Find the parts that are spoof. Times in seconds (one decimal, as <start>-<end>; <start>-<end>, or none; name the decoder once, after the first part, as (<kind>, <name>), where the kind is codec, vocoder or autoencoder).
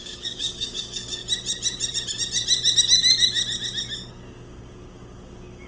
0.0-1.2 (codec, DAC); 4.1-5.7